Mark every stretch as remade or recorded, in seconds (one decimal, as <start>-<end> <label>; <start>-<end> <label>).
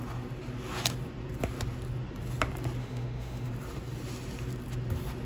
0.0-2.8 recorded; 2.8-3.5 remade; 3.5-5.2 recorded